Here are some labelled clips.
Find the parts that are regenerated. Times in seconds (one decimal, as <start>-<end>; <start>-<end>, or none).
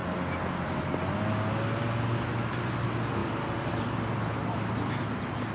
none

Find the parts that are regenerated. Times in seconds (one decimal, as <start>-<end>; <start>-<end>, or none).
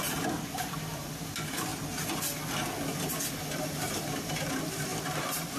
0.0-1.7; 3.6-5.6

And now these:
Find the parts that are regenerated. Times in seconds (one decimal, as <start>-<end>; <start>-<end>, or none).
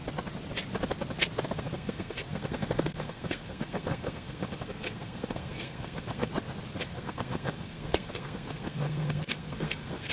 1.4-6.3; 6.9-10.1